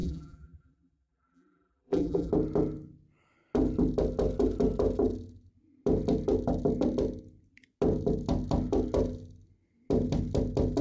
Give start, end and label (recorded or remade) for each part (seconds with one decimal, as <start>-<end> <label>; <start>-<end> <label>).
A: 0.0-2.3 remade; 2.3-10.8 recorded